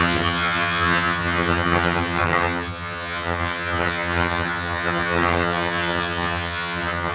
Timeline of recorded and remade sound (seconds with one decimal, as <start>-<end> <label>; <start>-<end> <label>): 0.0-7.1 remade